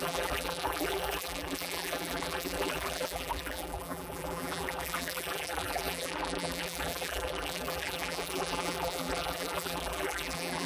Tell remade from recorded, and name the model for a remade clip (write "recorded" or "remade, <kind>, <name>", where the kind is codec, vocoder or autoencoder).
remade, vocoder, BigVGAN v2